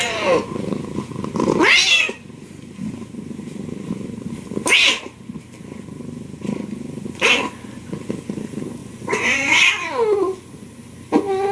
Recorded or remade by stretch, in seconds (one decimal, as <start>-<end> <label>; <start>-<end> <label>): 0.0-8.8 recorded; 8.8-9.6 remade; 9.6-11.5 recorded